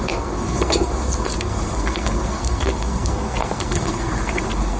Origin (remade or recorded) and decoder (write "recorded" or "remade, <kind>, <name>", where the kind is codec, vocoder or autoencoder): remade, codec, SNAC